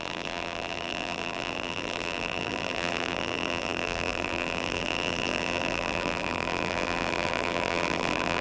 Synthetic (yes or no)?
yes